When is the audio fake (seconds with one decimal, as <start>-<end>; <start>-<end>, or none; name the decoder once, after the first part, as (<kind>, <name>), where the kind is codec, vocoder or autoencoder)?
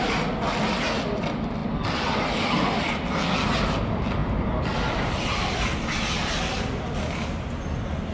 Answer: none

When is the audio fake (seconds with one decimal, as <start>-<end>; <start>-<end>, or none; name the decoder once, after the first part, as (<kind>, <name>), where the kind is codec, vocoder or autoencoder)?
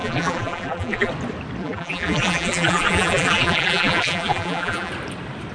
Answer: 0.0-1.1 (vocoder, BigVGAN v2); 1.6-4.9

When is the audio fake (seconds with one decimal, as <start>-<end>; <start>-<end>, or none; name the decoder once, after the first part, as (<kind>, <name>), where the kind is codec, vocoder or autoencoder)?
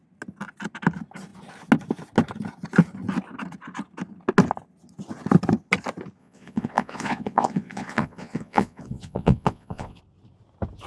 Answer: 6.2-10.0 (vocoder, Vocos)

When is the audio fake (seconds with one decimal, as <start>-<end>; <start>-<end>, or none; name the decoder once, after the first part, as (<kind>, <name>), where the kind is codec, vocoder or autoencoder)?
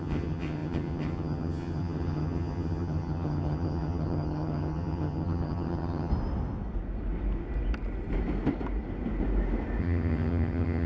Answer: 0.0-6.1 (vocoder, HiFi-GAN); 9.8-10.9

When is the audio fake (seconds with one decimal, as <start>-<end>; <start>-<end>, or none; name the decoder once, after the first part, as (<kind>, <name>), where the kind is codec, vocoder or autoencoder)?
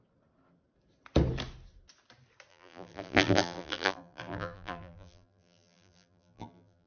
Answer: 2.5-6.9 (vocoder, BigVGAN v2)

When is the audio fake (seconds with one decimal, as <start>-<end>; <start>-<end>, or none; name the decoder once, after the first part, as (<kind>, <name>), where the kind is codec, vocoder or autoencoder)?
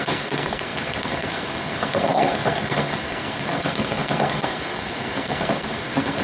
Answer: 0.0-6.2 (codec, SNAC)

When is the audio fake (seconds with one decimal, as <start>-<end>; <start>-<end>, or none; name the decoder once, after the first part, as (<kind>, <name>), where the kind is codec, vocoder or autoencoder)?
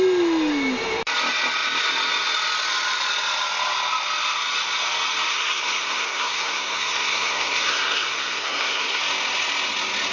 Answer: 5.3-9.0 (codec, SNAC)